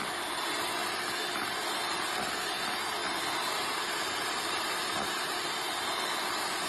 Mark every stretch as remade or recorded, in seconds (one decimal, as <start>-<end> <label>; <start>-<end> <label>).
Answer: 0.0-6.7 recorded